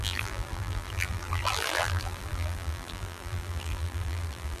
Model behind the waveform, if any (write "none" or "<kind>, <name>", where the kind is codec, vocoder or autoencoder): vocoder, BigVGAN v2